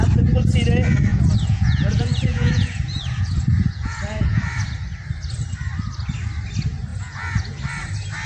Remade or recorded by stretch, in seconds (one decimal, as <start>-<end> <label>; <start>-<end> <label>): 0.0-1.1 recorded; 1.1-4.4 remade; 4.4-6.9 recorded; 6.9-7.6 remade; 7.6-8.3 recorded